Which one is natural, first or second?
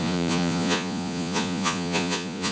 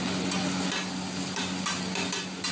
second